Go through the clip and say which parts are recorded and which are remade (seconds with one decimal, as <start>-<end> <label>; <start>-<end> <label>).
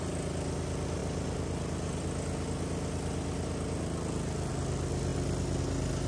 0.0-6.1 recorded